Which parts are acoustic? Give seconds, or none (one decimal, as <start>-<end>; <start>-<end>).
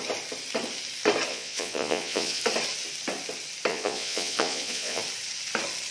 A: 0.0-1.3; 2.4-3.7; 5.0-5.9